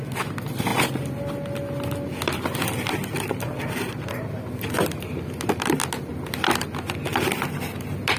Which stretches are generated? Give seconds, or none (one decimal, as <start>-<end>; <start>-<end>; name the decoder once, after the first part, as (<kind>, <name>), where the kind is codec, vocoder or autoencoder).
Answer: none